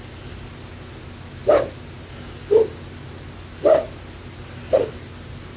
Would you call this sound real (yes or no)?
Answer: yes